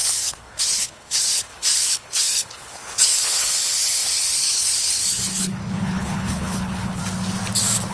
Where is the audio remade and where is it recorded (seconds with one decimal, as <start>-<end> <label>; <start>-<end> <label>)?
0.0-7.0 remade; 7.0-7.9 recorded